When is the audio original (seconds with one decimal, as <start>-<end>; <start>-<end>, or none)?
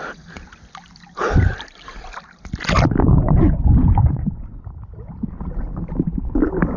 0.0-3.0; 4.6-6.8